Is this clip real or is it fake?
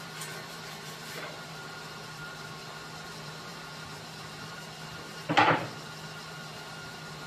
fake